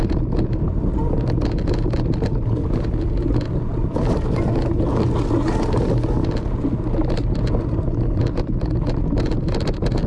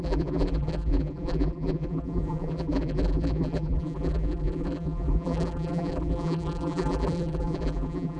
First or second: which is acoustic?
first